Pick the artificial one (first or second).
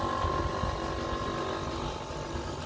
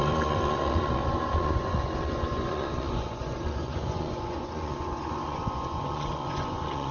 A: second